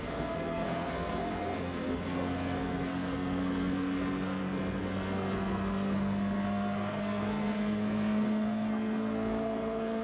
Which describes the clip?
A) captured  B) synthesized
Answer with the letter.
B